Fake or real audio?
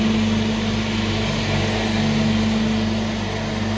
real